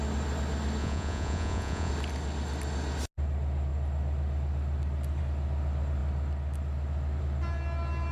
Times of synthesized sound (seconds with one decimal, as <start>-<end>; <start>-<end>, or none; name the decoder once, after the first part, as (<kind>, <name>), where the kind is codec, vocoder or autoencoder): 0.8-1.9 (vocoder, Vocos)